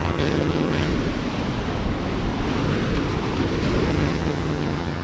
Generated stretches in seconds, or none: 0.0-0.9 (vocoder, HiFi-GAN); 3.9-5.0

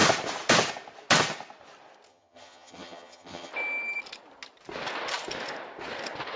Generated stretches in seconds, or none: 2.1-3.5 (vocoder, HiFi-GAN)